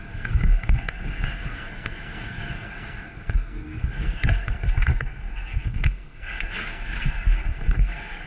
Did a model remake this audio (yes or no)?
yes